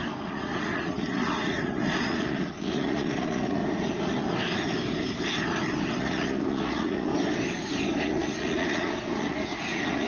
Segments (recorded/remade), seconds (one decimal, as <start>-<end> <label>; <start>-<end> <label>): 0.0-3.6 remade; 3.6-6.0 recorded; 6.0-7.1 remade; 7.1-8.0 recorded; 8.0-10.1 remade